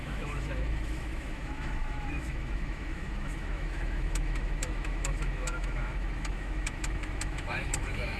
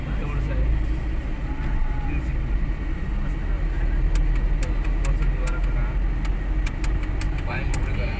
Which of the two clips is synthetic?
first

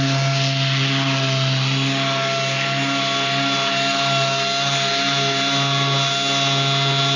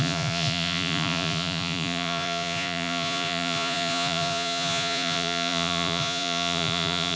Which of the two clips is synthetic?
second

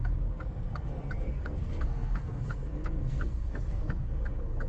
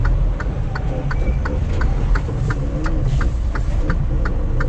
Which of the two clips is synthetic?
first